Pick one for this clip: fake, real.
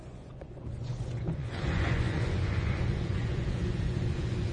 fake